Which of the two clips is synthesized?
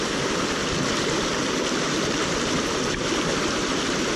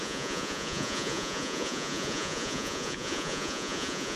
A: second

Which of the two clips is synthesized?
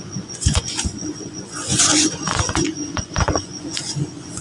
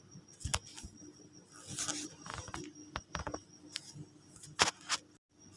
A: first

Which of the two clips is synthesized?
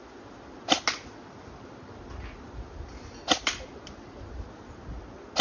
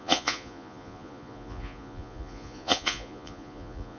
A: second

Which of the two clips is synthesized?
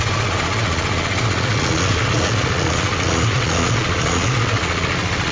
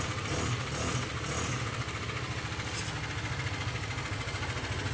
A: first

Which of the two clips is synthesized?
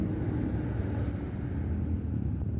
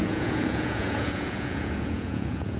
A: second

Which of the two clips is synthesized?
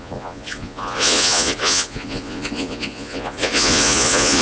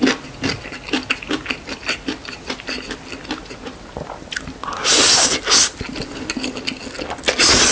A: first